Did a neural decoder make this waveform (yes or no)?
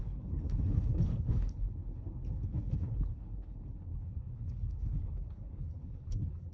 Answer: yes